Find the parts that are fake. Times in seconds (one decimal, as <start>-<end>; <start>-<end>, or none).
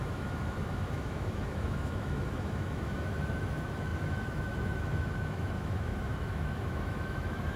0.0-7.6